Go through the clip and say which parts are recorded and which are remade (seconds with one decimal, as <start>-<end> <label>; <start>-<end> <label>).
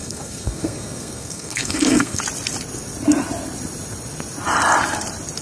0.0-2.2 remade; 2.2-5.4 recorded